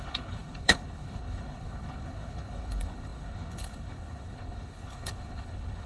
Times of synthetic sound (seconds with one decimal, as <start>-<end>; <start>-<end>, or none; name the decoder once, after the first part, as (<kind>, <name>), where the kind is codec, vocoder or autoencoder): 0.0-5.9 (codec, HILCodec)